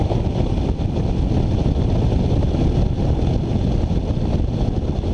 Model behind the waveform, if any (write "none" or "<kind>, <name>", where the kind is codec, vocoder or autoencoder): none